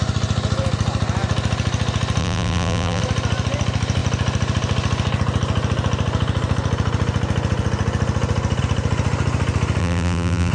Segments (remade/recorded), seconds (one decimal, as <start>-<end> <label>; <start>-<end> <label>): 0.0-2.2 recorded; 2.2-3.0 remade; 3.0-9.8 recorded; 9.8-10.5 remade